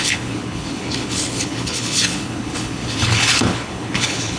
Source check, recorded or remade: remade